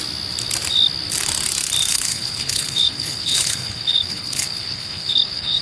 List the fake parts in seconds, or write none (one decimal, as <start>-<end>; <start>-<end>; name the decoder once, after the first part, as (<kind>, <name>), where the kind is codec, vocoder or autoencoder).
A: 1.9-5.6 (codec, HILCodec)